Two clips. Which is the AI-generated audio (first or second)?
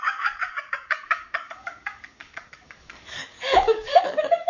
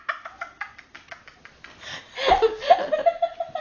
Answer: first